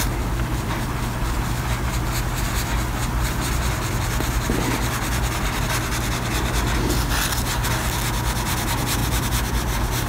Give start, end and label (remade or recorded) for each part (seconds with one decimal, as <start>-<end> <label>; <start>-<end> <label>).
0.0-10.1 recorded